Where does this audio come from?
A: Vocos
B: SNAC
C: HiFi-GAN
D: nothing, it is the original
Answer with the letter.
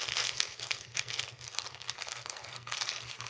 B